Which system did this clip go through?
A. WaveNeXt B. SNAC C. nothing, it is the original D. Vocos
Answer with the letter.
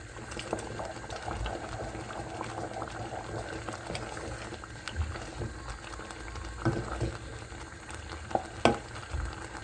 C